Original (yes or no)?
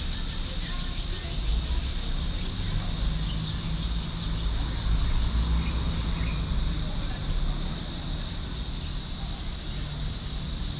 yes